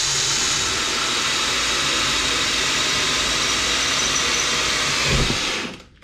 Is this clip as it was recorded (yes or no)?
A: yes